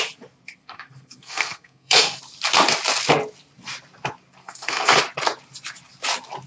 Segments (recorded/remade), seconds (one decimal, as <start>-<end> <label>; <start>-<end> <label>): 0.0-0.6 recorded; 0.6-2.2 remade; 2.2-4.4 recorded; 4.4-5.0 remade; 5.0-6.5 recorded